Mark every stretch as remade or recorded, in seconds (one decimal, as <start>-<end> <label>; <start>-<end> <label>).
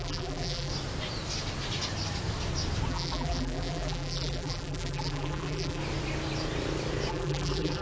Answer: 0.0-0.7 remade; 0.7-2.9 recorded; 2.9-5.8 remade; 5.8-7.1 recorded; 7.1-7.8 remade